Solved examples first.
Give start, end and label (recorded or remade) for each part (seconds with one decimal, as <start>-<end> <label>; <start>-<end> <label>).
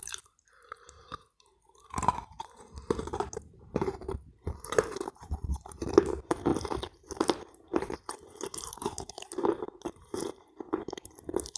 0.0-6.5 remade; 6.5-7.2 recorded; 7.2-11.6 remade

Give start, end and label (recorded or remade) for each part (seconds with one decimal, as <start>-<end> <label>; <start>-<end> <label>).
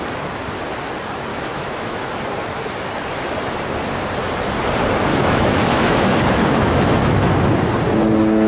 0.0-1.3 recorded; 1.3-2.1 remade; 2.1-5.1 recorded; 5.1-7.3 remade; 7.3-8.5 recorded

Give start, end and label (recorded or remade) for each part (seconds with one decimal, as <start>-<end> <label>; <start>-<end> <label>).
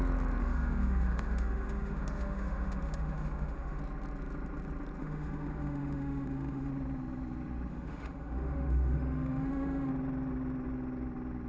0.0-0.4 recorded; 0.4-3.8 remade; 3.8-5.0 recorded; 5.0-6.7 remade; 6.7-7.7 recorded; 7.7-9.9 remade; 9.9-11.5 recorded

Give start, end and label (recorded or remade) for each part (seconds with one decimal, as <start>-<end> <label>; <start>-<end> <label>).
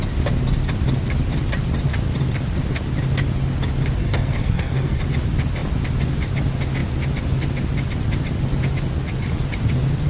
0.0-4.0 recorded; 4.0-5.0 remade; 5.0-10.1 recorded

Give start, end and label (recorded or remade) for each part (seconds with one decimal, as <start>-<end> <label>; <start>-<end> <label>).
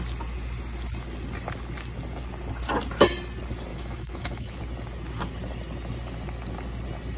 0.0-3.7 recorded; 3.7-4.6 remade; 4.6-7.2 recorded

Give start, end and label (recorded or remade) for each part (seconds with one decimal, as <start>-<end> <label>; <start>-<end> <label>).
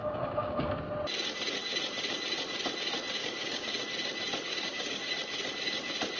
0.0-0.7 remade; 0.7-3.2 recorded; 3.2-3.8 remade; 3.8-4.5 recorded; 4.5-5.1 remade; 5.1-6.2 recorded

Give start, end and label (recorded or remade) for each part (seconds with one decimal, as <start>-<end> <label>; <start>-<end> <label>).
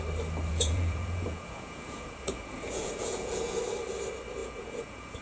0.0-0.5 recorded; 0.5-3.6 remade; 3.6-4.4 recorded; 4.4-5.2 remade